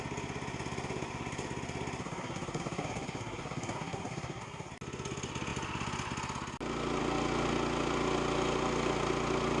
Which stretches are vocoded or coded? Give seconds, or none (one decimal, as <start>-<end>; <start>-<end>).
2.0-4.7